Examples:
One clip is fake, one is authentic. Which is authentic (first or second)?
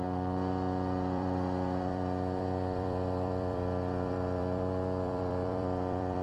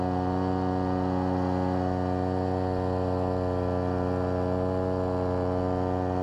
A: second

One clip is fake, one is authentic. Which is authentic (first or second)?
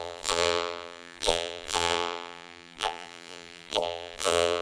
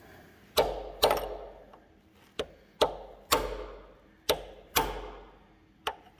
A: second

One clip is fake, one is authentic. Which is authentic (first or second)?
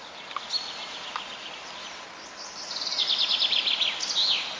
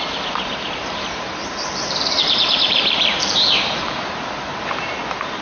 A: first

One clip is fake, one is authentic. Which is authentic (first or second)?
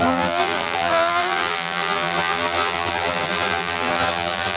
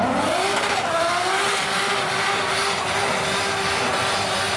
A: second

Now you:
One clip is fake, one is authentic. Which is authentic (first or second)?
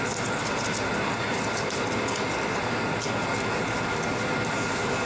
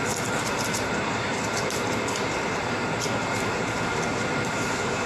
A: first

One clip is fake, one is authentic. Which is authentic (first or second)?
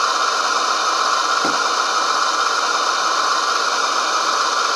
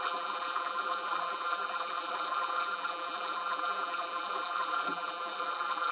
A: first